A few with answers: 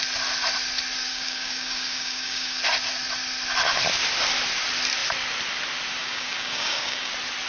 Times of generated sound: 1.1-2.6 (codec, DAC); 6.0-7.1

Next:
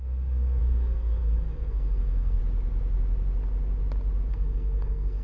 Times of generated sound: 0.0-2.4 (codec, SNAC); 4.3-5.2

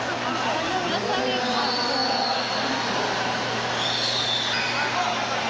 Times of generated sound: none

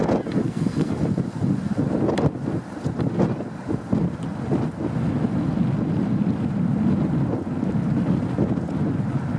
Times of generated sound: 0.4-1.0 (codec, SNAC)

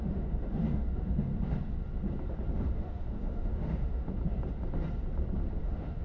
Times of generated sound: 0.0-1.3 (autoencoder, DAC-VAE); 2.6-4.2; 5.6-6.0